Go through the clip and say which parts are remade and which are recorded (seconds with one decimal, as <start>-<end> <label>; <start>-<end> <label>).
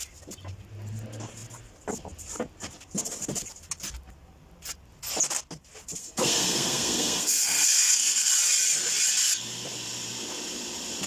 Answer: 0.0-6.0 recorded; 6.0-8.3 remade; 8.3-11.1 recorded